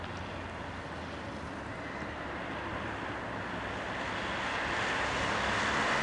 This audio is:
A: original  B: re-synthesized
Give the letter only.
A